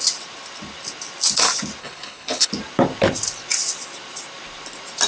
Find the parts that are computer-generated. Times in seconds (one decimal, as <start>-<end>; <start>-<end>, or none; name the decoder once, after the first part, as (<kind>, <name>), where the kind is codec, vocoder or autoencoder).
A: 1.8-2.5 (codec, HILCodec)